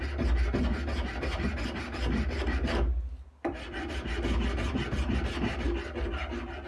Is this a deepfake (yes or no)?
no